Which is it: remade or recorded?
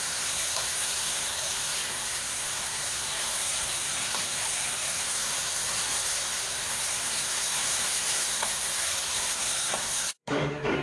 remade